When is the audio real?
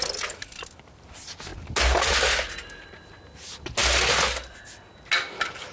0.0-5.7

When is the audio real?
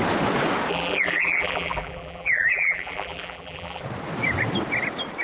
0.0-0.7; 3.8-5.2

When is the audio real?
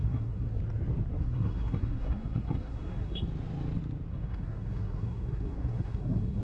0.6-1.1; 3.2-4.1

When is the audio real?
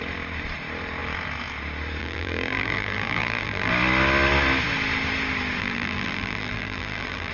0.0-2.0; 3.7-5.6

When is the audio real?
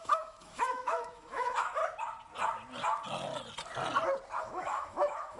1.8-4.4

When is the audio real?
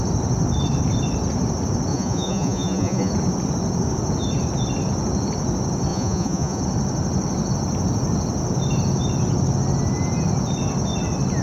0.0-1.9; 3.1-5.9; 6.6-11.4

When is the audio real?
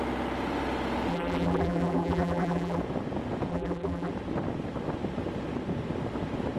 0.0-1.1; 2.8-3.5; 4.1-6.6